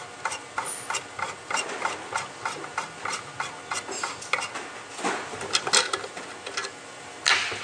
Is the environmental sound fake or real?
real